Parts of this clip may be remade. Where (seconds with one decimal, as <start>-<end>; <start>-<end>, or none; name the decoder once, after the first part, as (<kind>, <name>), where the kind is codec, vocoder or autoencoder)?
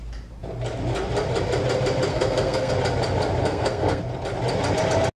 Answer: 2.1-2.7 (codec, SNAC); 3.4-4.0